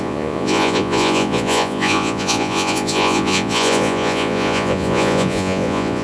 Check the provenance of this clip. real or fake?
fake